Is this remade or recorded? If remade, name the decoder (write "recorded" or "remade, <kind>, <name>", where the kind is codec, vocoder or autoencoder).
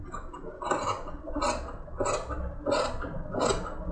recorded